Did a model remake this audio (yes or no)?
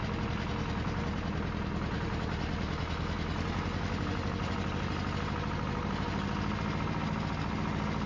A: no